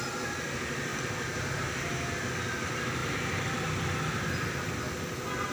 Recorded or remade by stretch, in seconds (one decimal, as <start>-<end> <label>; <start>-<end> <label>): 0.0-0.9 recorded; 0.9-2.3 remade; 2.3-3.0 recorded; 3.0-4.0 remade; 4.0-5.5 recorded